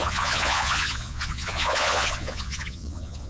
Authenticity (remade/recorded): remade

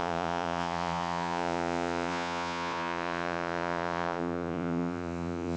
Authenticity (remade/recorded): remade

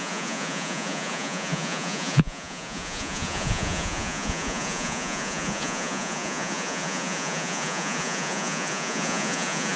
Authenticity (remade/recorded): remade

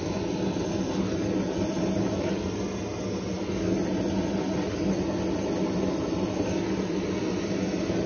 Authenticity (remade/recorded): recorded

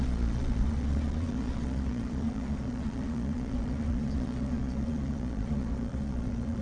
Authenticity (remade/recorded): remade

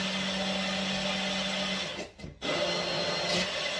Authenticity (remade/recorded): recorded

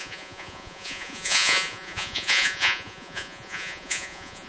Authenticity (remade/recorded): remade